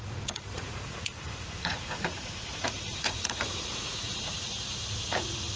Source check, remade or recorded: remade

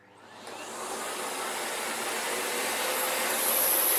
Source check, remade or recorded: recorded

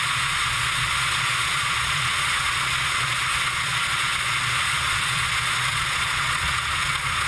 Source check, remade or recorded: remade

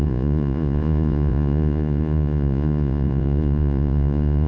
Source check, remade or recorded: remade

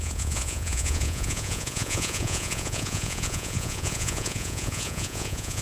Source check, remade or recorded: remade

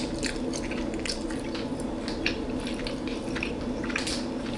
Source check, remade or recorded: recorded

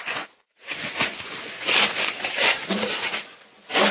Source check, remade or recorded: remade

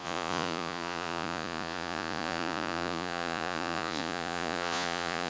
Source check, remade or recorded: remade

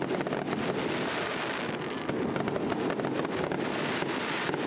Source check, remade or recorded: recorded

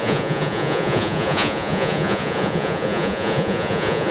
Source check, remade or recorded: remade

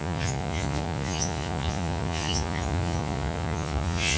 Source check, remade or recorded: remade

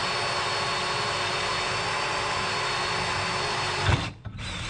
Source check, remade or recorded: recorded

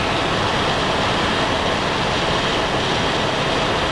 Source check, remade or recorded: recorded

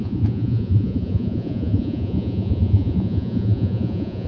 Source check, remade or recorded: remade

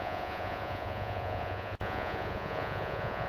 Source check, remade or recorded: remade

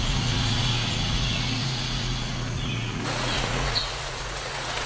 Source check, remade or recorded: remade